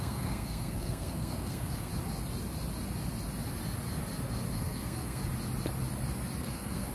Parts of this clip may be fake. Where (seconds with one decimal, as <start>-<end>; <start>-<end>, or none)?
0.0-1.9; 4.5-5.2; 6.4-6.9